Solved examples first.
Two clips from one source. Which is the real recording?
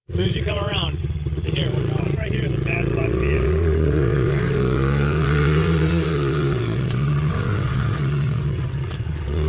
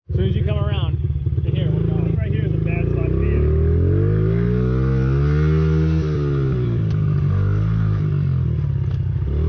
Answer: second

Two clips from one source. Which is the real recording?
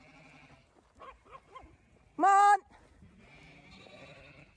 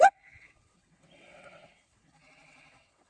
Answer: first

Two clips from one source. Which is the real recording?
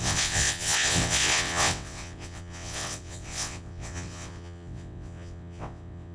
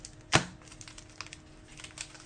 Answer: second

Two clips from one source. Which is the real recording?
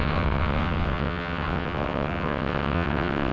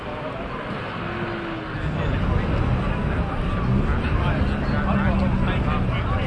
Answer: second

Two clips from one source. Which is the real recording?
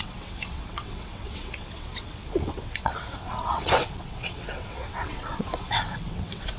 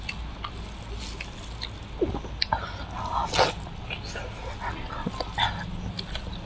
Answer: second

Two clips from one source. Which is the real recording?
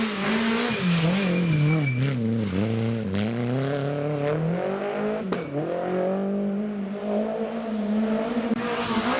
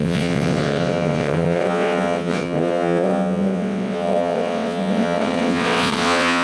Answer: first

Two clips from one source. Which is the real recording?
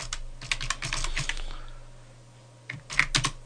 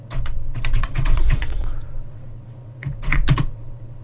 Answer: first